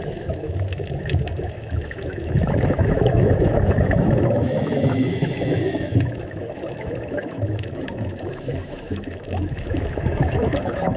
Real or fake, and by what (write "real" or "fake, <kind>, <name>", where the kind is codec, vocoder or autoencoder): fake, autoencoder, DAC-VAE